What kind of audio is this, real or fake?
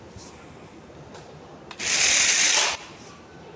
real